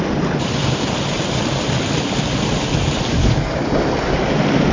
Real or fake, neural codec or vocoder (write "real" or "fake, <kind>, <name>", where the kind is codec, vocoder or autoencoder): real